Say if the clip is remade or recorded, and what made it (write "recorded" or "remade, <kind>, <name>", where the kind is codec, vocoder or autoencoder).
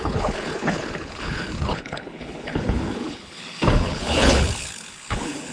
remade, codec, HILCodec